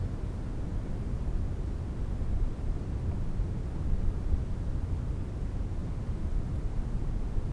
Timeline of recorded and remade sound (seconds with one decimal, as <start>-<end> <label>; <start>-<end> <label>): 0.0-0.7 recorded; 0.7-1.3 remade; 1.3-5.8 recorded; 5.8-7.1 remade; 7.1-7.5 recorded